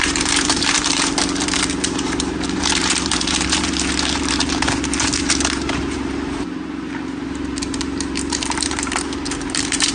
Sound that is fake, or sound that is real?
fake